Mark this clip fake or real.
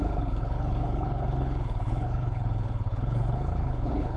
fake